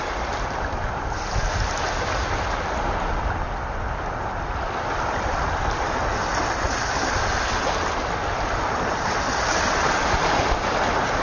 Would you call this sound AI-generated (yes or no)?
no